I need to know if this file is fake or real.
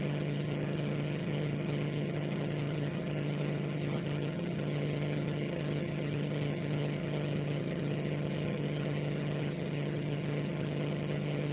fake